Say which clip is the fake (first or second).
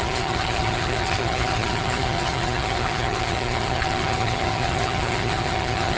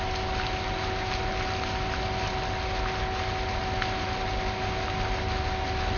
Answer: first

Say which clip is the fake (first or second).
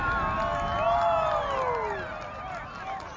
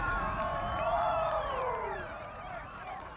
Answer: second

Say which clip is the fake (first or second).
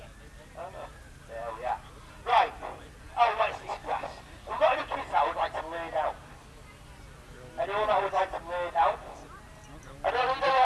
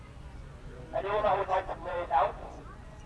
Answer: second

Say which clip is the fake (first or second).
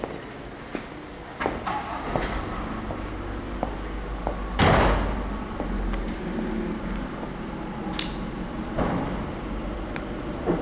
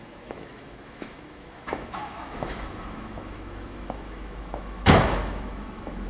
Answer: second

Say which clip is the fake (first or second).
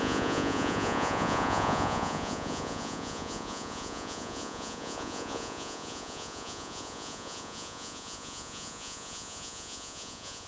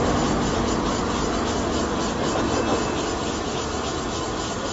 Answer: first